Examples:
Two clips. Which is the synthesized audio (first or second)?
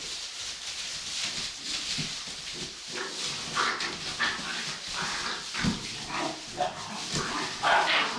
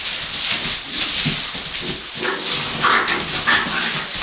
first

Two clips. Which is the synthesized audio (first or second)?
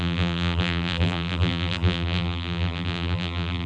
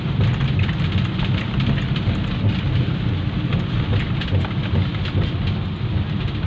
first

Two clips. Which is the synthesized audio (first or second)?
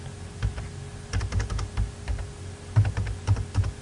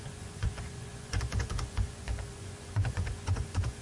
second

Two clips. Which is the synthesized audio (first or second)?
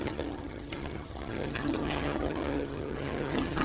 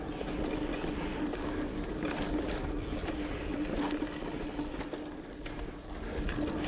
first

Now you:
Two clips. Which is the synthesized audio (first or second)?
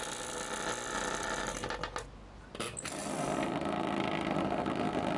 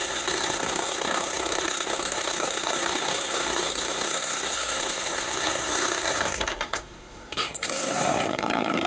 second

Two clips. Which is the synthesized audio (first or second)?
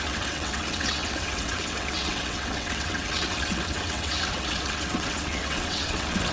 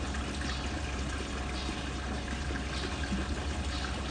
first